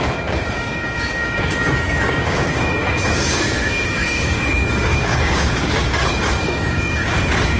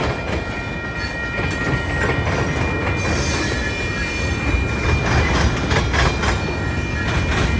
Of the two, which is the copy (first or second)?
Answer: first